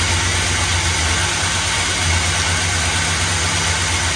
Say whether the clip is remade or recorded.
recorded